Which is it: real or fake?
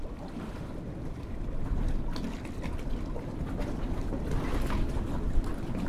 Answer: real